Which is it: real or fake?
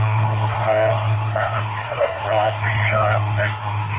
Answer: fake